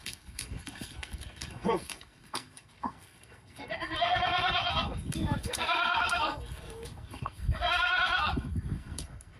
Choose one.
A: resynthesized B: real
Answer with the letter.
A